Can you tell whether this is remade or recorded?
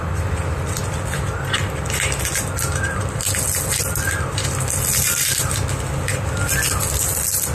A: recorded